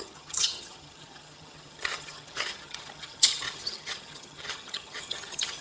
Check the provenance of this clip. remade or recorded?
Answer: remade